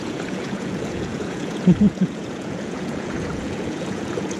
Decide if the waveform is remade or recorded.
remade